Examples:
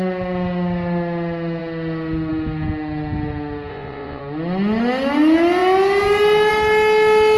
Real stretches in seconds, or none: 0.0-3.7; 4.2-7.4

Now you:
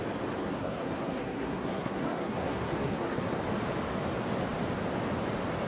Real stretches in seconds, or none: 0.0-0.4; 3.4-5.7

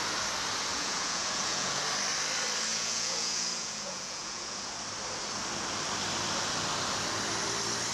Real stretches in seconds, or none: 0.0-0.7; 1.8-2.7; 4.7-7.9

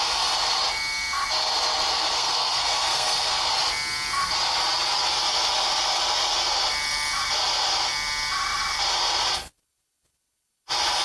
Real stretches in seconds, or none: 0.0-1.9; 3.5-11.0